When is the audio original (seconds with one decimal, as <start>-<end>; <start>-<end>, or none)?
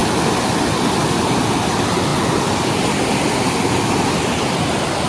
0.0-5.1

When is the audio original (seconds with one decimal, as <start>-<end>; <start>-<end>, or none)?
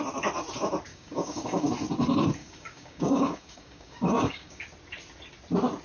0.0-0.9; 1.7-2.4; 4.6-5.8